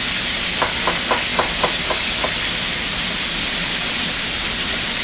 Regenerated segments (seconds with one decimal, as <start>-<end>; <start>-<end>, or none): 3.6-4.5